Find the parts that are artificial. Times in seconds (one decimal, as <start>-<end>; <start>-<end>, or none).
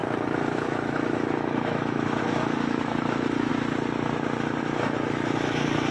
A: 0.0-3.5; 4.6-5.9